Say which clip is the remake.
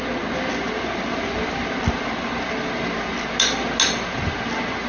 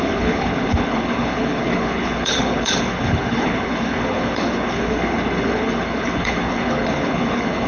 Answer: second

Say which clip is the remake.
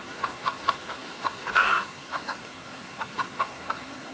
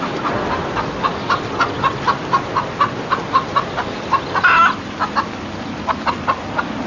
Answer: first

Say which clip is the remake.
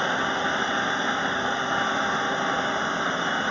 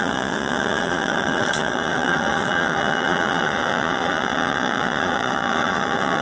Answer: second